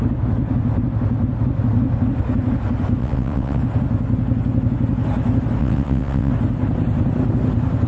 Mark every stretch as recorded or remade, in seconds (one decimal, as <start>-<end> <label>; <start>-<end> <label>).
0.0-3.0 recorded; 3.0-3.6 remade; 3.6-5.6 recorded; 5.6-6.3 remade; 6.3-7.9 recorded